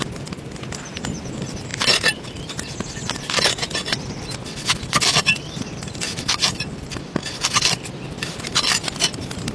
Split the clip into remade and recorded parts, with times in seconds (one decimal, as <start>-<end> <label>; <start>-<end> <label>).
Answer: 0.0-9.5 recorded

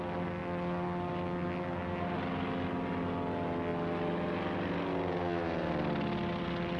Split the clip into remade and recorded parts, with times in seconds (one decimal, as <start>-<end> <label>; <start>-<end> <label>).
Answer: 0.0-6.8 recorded

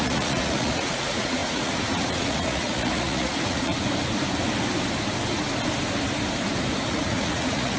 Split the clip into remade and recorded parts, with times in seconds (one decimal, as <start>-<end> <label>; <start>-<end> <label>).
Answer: 0.0-3.7 remade; 3.7-6.9 recorded; 6.9-7.8 remade

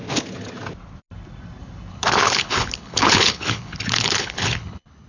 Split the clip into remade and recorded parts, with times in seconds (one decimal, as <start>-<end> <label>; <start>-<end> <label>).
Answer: 0.0-1.9 recorded; 1.9-5.1 remade

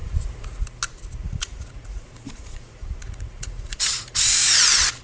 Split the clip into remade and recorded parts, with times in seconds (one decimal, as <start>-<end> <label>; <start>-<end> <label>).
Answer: 0.0-0.6 remade; 0.6-1.2 recorded; 1.2-4.2 remade; 4.2-5.0 recorded

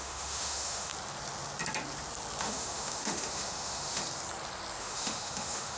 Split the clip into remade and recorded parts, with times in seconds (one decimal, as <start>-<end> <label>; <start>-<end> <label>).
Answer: 0.0-0.9 remade; 0.9-2.4 recorded; 2.4-4.0 remade; 4.0-4.8 recorded; 4.8-5.8 remade